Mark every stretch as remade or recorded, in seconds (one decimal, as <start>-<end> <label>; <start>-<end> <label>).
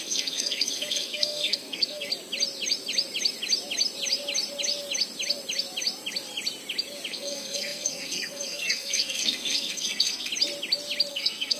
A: 0.0-2.1 remade; 2.1-7.1 recorded; 7.1-10.3 remade; 10.3-11.1 recorded; 11.1-11.6 remade